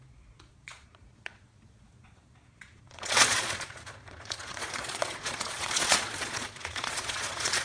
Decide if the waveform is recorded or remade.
remade